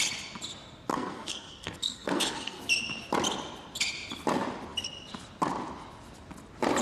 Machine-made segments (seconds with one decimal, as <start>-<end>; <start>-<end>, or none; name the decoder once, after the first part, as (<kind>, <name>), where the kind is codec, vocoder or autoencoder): 0.9-2.6 (codec, SNAC)